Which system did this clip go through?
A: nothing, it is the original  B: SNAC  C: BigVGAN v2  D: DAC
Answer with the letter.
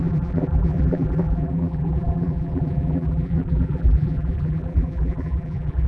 C